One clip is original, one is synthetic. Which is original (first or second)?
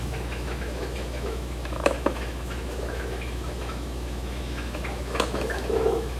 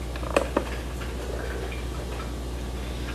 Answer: second